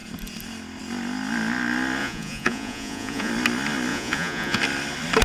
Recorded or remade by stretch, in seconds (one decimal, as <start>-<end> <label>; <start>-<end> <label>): 0.0-2.0 recorded; 2.0-3.3 remade; 3.3-3.9 recorded; 3.9-4.6 remade; 4.6-5.2 recorded